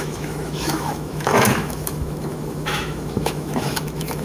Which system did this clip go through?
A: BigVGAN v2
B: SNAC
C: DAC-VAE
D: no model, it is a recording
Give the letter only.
C